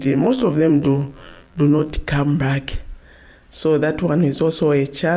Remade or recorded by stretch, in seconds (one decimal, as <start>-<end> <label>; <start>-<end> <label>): 0.0-1.9 remade; 1.9-5.2 recorded